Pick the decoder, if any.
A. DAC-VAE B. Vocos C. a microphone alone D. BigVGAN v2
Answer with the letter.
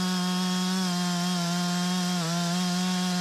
C